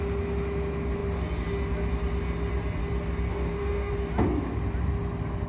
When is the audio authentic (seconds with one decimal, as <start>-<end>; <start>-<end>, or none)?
0.0-3.3; 3.9-5.5